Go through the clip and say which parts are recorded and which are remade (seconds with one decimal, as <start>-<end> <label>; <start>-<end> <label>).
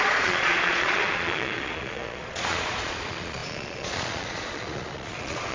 0.0-5.5 remade